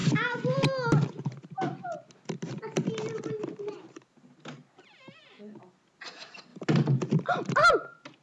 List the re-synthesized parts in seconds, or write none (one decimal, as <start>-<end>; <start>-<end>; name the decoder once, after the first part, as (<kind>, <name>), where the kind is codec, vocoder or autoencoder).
none